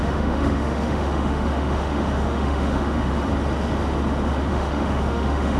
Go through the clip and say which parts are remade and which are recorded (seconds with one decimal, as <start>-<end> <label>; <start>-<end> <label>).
0.0-3.1 remade; 3.1-4.5 recorded; 4.5-5.6 remade